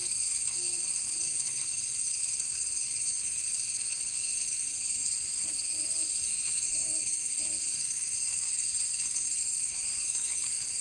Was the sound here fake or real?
fake